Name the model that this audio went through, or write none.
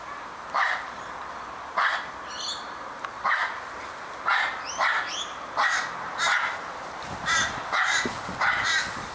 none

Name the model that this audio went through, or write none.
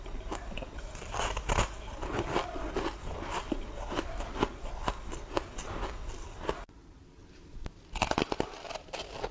none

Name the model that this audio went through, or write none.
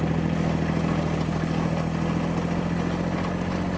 none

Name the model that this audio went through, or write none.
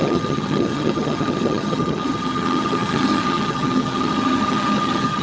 vocoder, HiFi-GAN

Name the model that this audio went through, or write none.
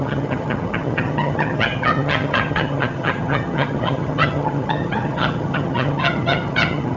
vocoder, HiFi-GAN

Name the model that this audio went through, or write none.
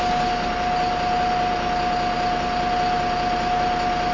none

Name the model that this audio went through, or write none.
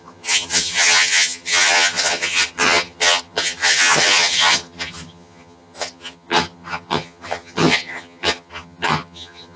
vocoder, HiFi-GAN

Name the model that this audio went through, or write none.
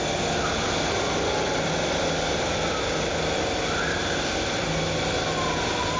none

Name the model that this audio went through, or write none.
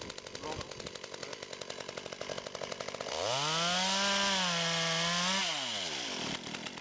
none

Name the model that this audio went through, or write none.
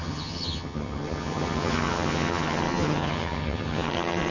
vocoder, HiFi-GAN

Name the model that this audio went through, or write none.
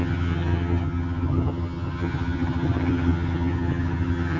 vocoder, HiFi-GAN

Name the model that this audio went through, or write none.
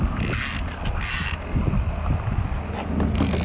none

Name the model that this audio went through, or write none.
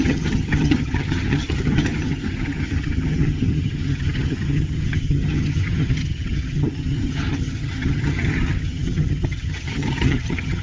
vocoder, HiFi-GAN